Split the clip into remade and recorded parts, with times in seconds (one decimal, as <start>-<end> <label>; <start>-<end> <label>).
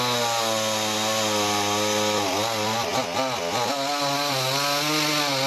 0.0-5.5 recorded